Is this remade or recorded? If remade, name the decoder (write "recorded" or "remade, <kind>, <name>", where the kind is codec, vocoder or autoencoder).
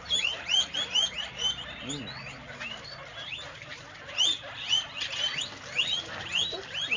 recorded